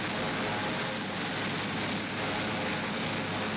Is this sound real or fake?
real